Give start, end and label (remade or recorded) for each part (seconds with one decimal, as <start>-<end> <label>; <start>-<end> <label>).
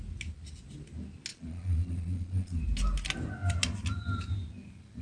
0.0-1.3 recorded; 1.3-2.6 remade; 2.6-5.0 recorded